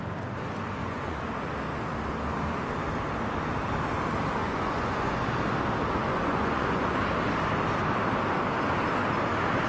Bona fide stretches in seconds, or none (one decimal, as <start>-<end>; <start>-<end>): 0.0-0.8; 1.3-4.4; 5.2-6.1; 7.0-9.7